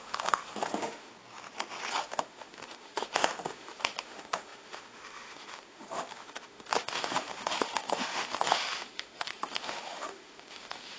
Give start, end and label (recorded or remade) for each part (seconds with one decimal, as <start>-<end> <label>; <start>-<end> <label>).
0.0-1.1 remade; 1.1-2.0 recorded; 2.0-11.0 remade